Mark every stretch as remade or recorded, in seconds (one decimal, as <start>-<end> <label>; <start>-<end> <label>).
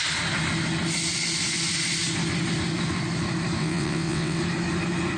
0.0-3.6 recorded; 3.6-4.4 remade; 4.4-5.2 recorded